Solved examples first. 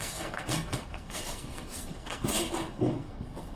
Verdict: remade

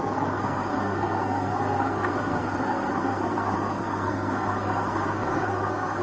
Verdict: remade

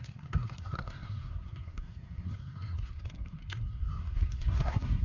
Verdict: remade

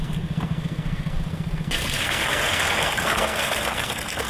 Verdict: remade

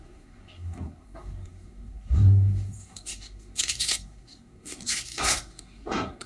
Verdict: remade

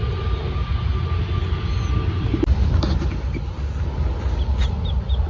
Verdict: recorded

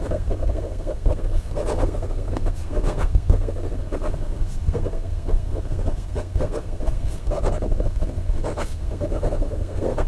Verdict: remade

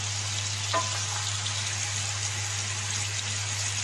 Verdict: recorded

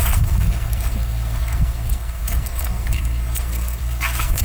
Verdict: remade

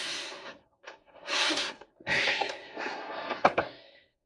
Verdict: remade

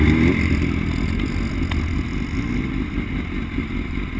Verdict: recorded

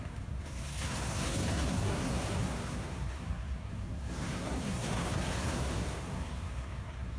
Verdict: remade